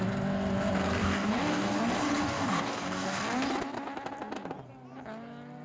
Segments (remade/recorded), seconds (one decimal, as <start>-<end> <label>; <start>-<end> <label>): 0.0-1.0 recorded; 1.0-1.8 remade; 1.8-2.2 recorded; 2.2-3.2 remade; 3.2-5.6 recorded